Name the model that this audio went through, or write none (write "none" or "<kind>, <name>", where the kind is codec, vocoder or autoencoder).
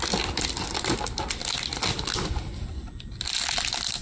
none